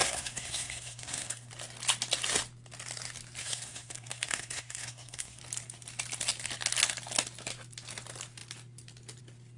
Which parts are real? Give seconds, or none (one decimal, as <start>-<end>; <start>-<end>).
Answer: 1.5-3.4; 5.4-9.6